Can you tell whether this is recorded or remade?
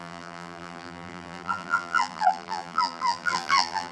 remade